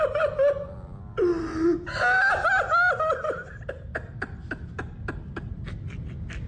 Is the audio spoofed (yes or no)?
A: no